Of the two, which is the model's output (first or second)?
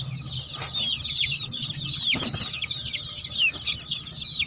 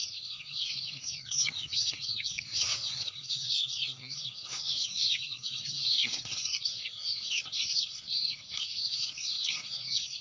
second